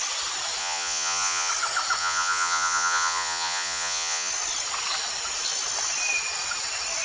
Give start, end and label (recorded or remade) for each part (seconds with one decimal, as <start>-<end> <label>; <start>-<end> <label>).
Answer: 0.0-0.6 recorded; 0.6-1.5 remade; 1.5-2.0 recorded; 2.0-4.3 remade; 4.3-7.0 recorded